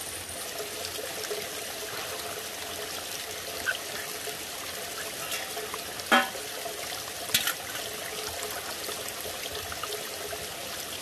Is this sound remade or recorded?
recorded